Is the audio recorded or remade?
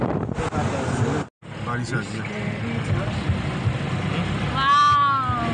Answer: recorded